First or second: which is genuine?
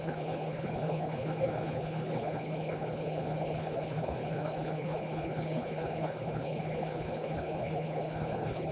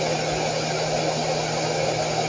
second